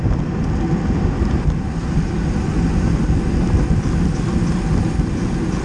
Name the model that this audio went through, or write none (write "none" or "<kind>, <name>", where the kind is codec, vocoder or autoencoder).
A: none